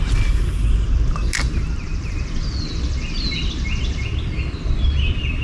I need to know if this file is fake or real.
real